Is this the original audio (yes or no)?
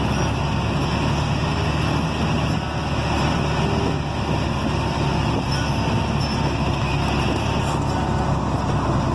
yes